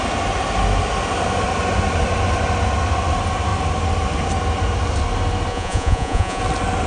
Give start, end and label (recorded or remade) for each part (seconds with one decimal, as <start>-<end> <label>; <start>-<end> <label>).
0.0-5.5 recorded; 5.5-6.4 remade; 6.4-6.9 recorded